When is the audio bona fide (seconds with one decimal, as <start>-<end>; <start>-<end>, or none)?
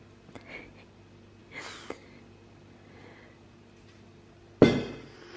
0.0-5.4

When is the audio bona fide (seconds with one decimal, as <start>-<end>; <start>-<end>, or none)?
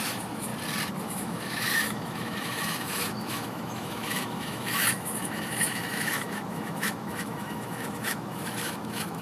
0.5-1.0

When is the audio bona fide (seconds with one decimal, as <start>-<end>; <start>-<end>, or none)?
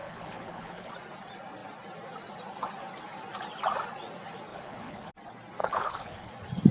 0.9-4.5; 5.1-5.6; 6.3-6.7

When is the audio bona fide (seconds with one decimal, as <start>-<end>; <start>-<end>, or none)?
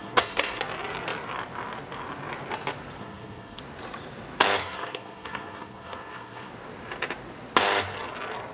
0.6-3.0; 3.6-4.6; 6.5-8.5